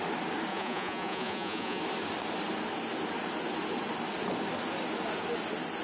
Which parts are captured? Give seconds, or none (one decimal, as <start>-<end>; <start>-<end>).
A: 0.0-0.5; 1.8-5.8